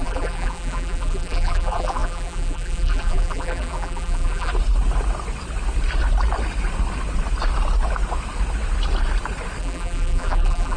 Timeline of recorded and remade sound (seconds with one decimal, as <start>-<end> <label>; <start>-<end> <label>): 0.0-4.5 remade; 4.5-9.6 recorded; 9.6-10.8 remade